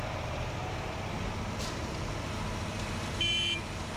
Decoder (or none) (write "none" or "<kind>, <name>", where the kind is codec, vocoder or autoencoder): vocoder, BigVGAN v2